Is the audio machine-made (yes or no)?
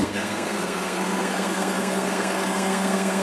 yes